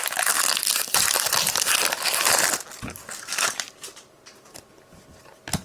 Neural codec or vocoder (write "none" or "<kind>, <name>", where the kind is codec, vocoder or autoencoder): none